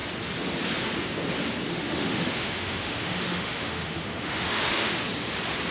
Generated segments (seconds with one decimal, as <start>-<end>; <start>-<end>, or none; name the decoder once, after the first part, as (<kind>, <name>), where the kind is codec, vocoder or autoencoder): 1.7-5.1 (autoencoder, DAC-VAE)